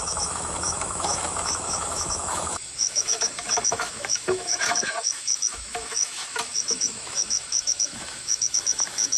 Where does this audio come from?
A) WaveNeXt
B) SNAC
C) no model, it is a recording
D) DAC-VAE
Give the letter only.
D